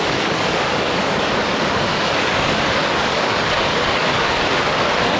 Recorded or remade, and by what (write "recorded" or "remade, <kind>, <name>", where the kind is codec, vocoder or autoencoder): remade, codec, DAC